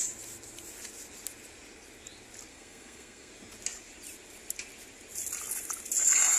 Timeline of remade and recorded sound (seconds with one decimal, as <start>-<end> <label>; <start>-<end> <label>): 0.0-2.5 recorded; 2.5-3.3 remade; 3.3-6.4 recorded